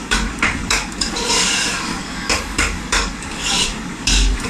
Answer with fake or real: fake